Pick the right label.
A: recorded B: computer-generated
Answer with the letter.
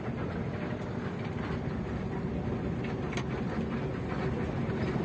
A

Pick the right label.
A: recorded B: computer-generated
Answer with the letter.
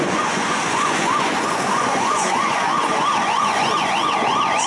B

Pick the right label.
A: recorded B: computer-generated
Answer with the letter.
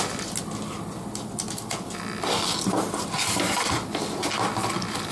A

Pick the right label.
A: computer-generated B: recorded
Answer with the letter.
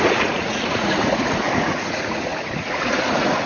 A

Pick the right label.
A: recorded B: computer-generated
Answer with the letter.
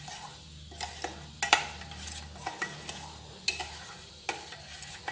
A